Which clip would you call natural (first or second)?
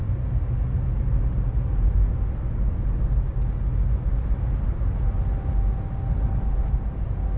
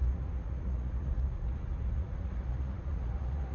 first